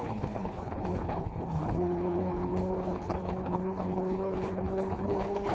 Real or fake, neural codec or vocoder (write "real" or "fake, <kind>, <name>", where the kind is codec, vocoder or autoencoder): fake, codec, HILCodec